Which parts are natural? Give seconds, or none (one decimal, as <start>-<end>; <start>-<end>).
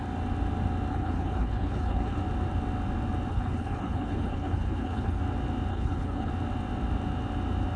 0.0-0.9; 2.2-3.3; 5.2-5.7; 6.3-7.8